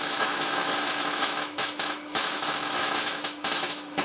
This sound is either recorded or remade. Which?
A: remade